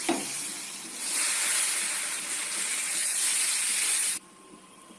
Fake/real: fake